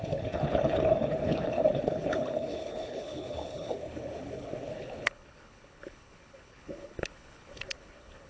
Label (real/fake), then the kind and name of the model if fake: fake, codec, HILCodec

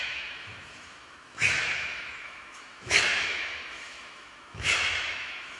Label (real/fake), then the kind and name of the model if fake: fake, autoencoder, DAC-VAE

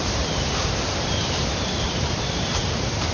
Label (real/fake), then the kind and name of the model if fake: fake, vocoder, BigVGAN v2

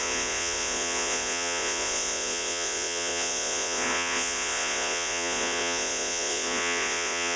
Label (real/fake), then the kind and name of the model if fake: fake, vocoder, Vocos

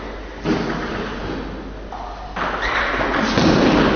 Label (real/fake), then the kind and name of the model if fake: real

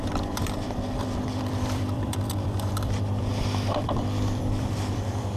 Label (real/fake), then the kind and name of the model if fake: fake, vocoder, BigVGAN v2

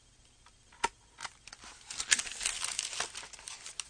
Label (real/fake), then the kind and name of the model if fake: real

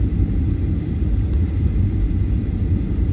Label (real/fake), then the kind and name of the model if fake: fake, vocoder, BigVGAN v2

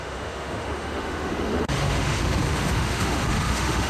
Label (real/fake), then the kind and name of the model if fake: fake, autoencoder, DAC-VAE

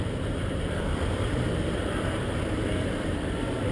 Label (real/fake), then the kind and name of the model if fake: fake, vocoder, BigVGAN v2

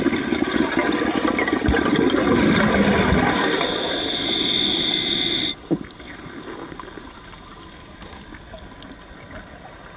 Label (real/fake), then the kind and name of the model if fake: real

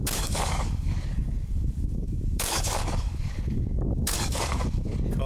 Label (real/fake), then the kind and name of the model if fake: fake, codec, DAC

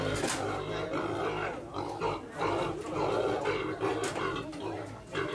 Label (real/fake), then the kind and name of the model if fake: real